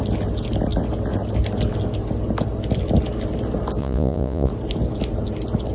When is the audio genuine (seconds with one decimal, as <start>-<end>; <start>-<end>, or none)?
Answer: 0.0-3.8; 4.5-5.7